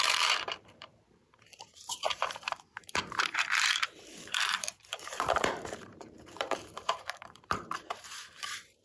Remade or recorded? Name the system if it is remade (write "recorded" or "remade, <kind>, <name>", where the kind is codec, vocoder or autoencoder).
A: remade, vocoder, BigVGAN v2